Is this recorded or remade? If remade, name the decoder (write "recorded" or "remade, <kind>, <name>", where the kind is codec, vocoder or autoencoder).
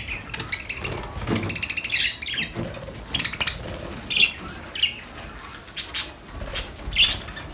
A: recorded